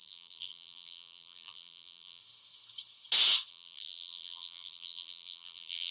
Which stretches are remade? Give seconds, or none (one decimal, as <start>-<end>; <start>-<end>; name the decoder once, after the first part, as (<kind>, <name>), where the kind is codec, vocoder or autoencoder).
0.0-2.2 (vocoder, BigVGAN v2); 3.5-5.9